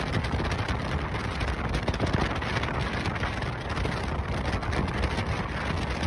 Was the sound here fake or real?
real